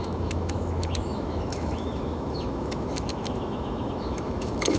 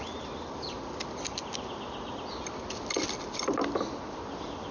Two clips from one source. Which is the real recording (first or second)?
second